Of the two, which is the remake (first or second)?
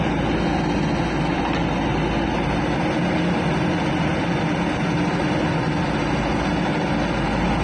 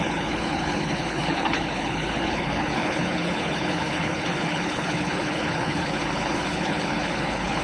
second